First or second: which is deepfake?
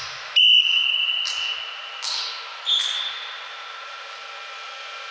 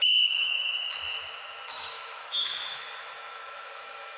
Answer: second